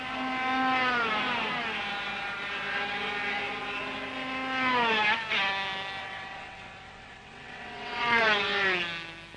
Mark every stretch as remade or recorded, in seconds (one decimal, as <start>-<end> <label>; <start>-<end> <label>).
0.0-6.0 recorded; 6.0-8.2 remade; 8.2-9.4 recorded